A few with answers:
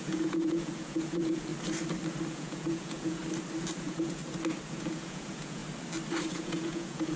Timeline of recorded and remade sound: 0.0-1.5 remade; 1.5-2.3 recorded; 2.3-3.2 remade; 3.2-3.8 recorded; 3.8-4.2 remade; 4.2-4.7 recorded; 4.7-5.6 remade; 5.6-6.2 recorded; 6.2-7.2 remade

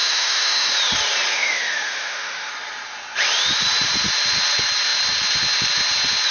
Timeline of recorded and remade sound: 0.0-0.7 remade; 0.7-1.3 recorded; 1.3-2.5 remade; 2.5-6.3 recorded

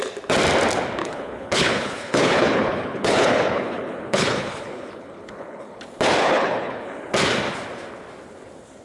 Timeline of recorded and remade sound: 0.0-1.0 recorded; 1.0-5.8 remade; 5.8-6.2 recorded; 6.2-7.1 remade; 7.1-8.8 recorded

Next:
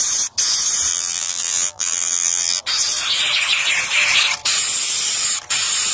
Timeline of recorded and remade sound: 0.0-0.9 recorded; 0.9-2.6 remade; 2.6-5.9 recorded

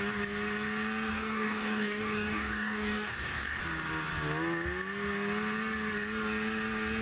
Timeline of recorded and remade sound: 0.0-1.1 recorded; 1.1-3.6 remade; 3.6-7.0 recorded

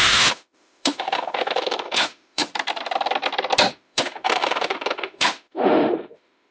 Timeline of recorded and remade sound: 0.0-2.4 remade; 2.4-3.7 recorded; 3.7-6.5 remade